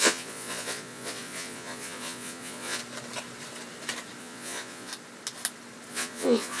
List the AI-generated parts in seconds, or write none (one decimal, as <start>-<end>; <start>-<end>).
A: 0.0-2.8; 4.2-4.9; 5.9-6.6